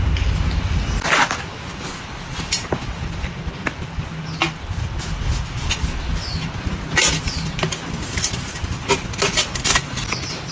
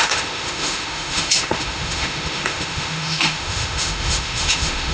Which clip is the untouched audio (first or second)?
first